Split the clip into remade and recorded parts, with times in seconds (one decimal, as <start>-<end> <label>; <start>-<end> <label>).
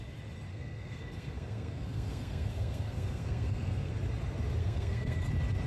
0.0-0.5 recorded; 0.5-3.9 remade; 3.9-4.6 recorded; 4.6-5.3 remade; 5.3-5.7 recorded